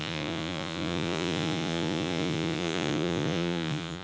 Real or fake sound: fake